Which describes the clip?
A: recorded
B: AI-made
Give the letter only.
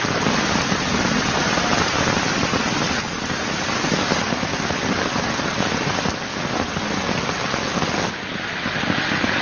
A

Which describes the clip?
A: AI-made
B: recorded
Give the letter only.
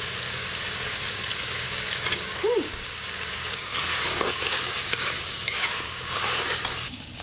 A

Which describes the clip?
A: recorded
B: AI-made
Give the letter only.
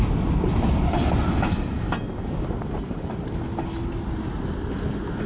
A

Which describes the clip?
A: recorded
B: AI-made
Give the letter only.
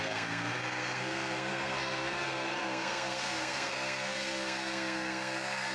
B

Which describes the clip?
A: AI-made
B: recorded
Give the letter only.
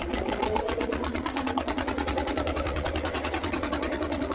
A